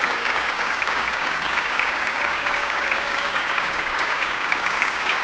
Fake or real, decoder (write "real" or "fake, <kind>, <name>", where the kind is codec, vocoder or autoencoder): fake, codec, DAC